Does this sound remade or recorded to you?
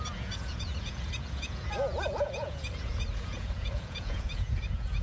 remade